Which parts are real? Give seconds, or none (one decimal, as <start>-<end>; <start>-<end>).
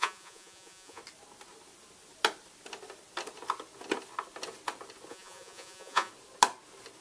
1.0-5.1; 6.1-7.0